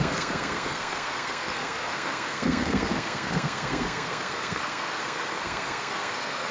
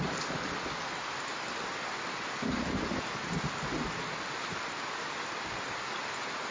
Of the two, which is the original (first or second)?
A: second